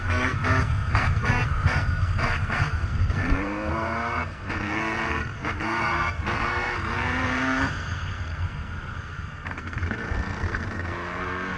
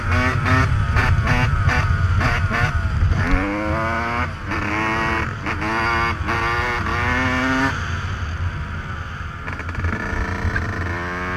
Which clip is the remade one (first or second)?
first